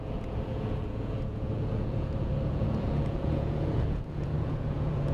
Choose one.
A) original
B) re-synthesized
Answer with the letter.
B